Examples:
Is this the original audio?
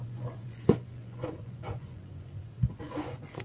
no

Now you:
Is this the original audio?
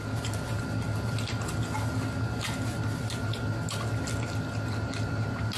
yes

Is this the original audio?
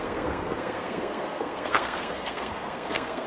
no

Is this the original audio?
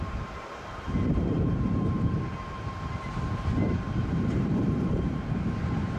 no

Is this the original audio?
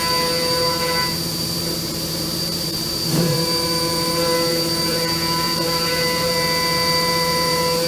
no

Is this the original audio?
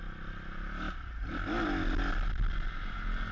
yes